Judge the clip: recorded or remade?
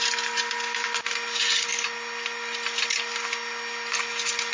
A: recorded